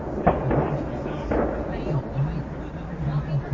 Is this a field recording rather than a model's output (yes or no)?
yes